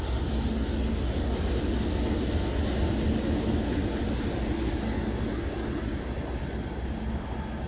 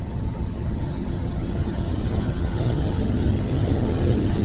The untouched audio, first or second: first